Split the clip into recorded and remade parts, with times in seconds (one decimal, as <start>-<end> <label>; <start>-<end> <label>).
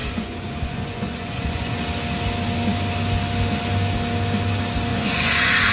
0.0-1.8 remade; 1.8-4.9 recorded; 4.9-5.7 remade